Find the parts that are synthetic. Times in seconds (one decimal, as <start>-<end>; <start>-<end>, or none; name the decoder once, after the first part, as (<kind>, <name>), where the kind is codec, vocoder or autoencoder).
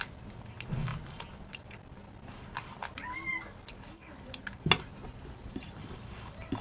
none